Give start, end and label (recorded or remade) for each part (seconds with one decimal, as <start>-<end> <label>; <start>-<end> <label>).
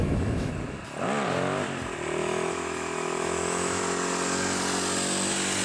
0.0-0.5 remade; 0.5-2.2 recorded; 2.2-3.8 remade; 3.8-5.6 recorded